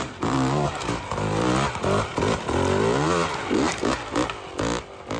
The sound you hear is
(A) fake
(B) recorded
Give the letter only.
B